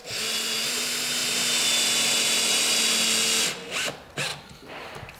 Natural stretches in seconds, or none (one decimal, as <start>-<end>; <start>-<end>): 0.0-5.2